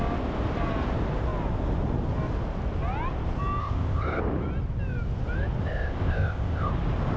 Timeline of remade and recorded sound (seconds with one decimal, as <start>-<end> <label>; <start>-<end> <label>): 0.0-3.6 recorded; 3.6-4.2 remade; 4.2-5.6 recorded; 5.6-6.7 remade; 6.7-7.2 recorded